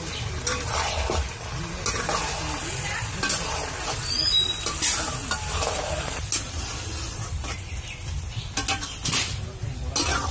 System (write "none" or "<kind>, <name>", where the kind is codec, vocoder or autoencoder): none